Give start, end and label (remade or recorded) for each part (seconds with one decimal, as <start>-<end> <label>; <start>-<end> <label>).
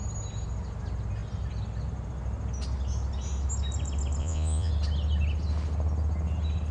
0.0-4.2 recorded; 4.2-4.7 remade; 4.7-6.7 recorded